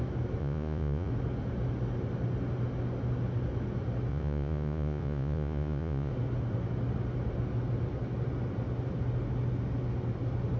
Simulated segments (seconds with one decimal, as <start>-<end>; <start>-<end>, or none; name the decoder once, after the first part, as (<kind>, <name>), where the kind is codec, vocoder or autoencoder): 0.4-1.1 (vocoder, Vocos); 4.1-6.1